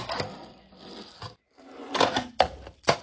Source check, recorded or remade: recorded